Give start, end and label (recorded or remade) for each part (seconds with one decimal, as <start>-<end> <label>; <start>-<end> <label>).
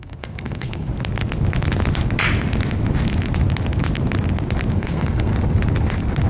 0.0-0.9 remade; 0.9-4.7 recorded; 4.7-5.3 remade; 5.3-6.3 recorded